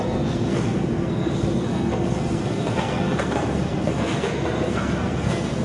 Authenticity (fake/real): fake